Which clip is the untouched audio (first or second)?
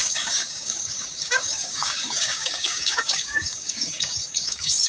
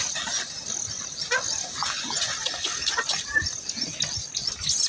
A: second